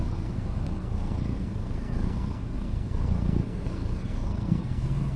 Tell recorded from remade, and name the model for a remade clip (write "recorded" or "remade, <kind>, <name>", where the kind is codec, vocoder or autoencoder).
remade, codec, SNAC